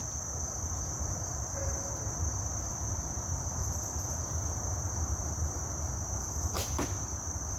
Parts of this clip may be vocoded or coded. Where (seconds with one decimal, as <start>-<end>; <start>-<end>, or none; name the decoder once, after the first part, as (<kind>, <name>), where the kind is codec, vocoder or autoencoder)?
0.5-1.6 (vocoder, BigVGAN v2); 2.6-3.6; 4.2-7.6